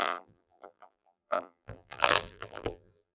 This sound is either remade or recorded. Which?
remade